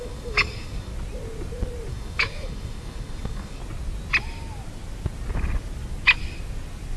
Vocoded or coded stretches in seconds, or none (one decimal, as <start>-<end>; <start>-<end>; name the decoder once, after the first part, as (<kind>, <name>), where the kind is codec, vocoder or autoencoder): 0.0-0.9 (codec, DAC); 1.9-3.6